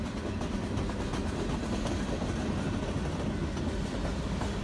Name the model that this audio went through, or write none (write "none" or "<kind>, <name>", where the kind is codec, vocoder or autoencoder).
none